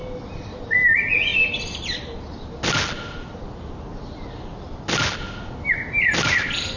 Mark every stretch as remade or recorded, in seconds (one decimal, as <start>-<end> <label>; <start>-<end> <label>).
0.0-6.8 recorded